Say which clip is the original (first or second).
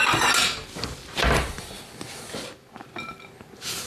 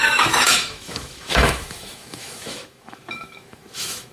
first